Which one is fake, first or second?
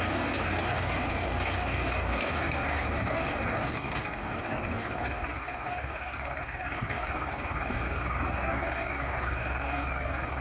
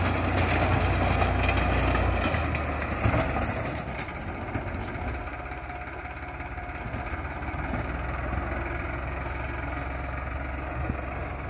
first